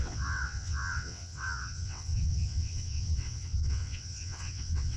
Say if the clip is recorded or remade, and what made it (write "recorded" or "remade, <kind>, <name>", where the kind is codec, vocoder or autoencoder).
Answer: remade, vocoder, WaveNeXt